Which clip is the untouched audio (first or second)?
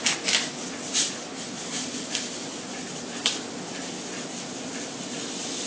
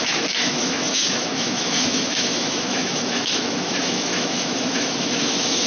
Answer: first